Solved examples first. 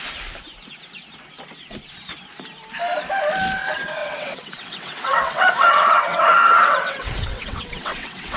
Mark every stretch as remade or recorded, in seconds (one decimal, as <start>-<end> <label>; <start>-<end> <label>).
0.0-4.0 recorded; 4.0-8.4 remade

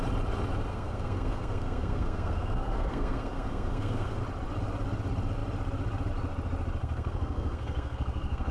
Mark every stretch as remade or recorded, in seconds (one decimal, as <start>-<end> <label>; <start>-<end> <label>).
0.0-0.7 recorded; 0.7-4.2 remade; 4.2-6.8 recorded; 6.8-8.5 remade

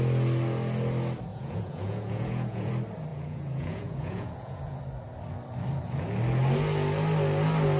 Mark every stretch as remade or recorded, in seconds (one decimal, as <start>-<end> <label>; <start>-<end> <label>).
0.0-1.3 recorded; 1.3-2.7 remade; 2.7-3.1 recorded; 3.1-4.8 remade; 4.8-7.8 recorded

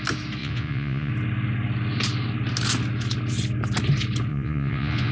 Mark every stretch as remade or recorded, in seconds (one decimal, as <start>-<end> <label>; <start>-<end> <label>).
0.0-0.4 recorded; 0.4-1.1 remade; 1.1-4.3 recorded; 4.3-5.1 remade